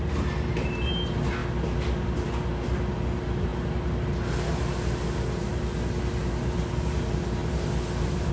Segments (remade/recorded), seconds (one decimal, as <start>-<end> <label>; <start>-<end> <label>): 0.0-8.3 recorded